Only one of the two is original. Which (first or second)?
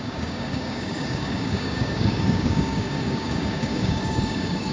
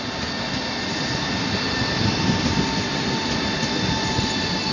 second